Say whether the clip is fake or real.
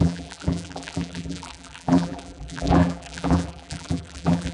fake